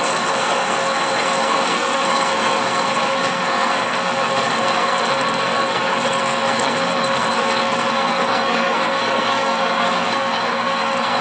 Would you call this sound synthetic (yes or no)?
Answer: yes